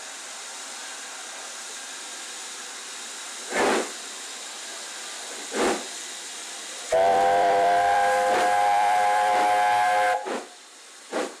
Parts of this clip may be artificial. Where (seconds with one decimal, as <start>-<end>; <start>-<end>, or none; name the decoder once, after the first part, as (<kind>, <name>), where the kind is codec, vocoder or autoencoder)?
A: 7.1-9.3 (vocoder, BigVGAN v2)